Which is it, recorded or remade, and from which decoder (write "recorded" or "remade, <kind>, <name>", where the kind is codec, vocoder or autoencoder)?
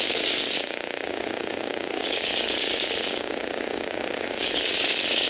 remade, codec, DAC